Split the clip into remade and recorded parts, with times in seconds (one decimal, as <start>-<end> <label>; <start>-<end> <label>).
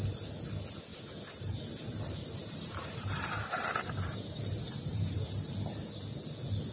0.0-0.9 recorded; 0.9-2.0 remade; 2.0-2.4 recorded; 2.4-5.4 remade; 5.4-6.7 recorded